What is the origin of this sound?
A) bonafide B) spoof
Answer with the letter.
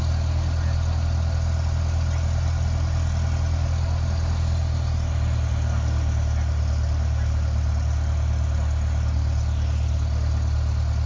A